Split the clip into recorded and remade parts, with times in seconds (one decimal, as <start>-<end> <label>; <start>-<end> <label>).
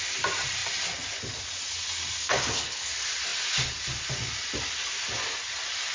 0.0-2.2 recorded; 2.2-2.9 remade; 2.9-5.9 recorded